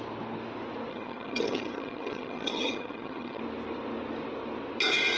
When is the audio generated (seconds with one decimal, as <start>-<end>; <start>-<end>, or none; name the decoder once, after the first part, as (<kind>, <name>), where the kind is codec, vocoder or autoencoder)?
0.9-3.4 (vocoder, HiFi-GAN)